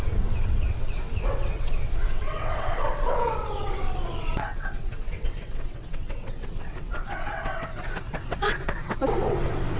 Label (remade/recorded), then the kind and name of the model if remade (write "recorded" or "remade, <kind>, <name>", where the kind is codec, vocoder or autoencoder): remade, vocoder, WaveNeXt